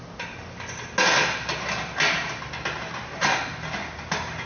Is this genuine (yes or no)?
yes